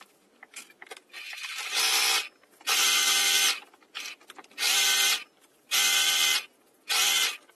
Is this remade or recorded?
remade